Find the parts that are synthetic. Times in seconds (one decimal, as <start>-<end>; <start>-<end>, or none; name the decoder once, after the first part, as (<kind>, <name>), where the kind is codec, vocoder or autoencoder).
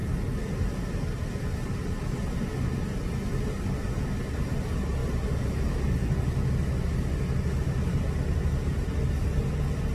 none